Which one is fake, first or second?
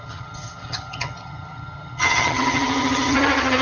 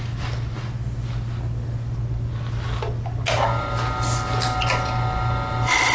first